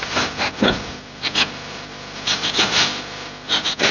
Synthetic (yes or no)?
no